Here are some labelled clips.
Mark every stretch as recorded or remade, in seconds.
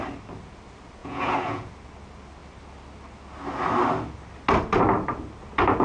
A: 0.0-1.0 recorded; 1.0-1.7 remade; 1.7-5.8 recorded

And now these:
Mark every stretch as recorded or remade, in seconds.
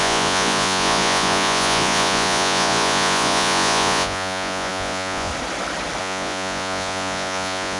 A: 0.0-5.3 remade; 5.3-6.0 recorded; 6.0-7.8 remade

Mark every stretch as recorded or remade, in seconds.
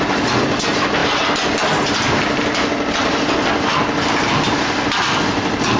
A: 0.0-5.8 recorded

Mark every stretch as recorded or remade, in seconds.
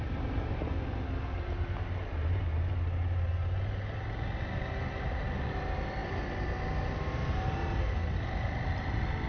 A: 0.0-9.3 recorded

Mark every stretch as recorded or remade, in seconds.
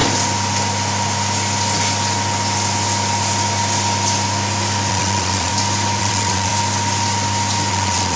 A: 0.0-4.9 recorded; 4.9-5.5 remade; 5.5-6.0 recorded; 6.0-6.5 remade; 6.5-7.7 recorded; 7.7-8.2 remade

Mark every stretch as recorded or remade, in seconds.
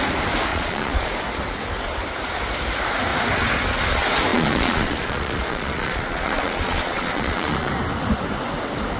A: 0.0-0.5 recorded; 0.5-1.1 remade; 1.1-4.3 recorded; 4.3-7.7 remade; 7.7-9.0 recorded